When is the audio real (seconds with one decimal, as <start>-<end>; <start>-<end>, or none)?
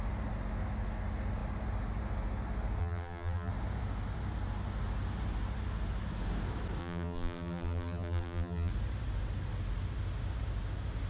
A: 0.0-2.8; 3.5-6.8; 8.7-11.1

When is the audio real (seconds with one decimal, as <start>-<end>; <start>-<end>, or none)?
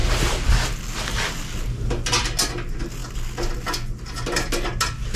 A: 0.0-5.2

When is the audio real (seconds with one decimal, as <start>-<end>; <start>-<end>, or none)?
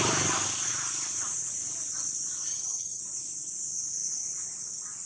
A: 0.0-2.5; 3.0-5.1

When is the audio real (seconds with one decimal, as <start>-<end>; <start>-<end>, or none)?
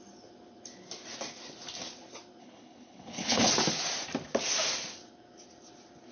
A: 0.0-2.4; 3.5-6.1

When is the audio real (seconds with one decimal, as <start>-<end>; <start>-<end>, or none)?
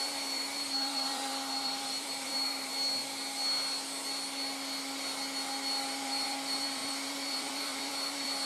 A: 2.7-5.8